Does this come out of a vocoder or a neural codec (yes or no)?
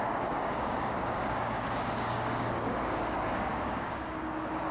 yes